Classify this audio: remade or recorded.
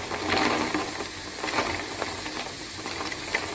recorded